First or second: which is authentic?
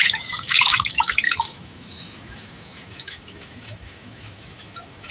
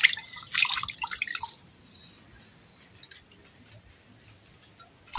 second